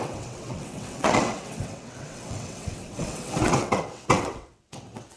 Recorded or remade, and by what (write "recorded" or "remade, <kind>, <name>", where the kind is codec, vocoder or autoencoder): remade, vocoder, WaveNeXt